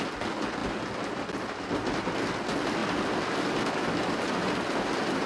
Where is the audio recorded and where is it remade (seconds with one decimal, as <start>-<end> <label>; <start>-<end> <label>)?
0.0-5.3 recorded